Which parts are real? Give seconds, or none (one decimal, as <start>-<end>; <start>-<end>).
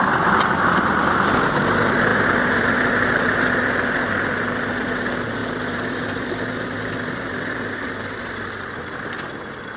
0.0-5.4; 8.8-9.8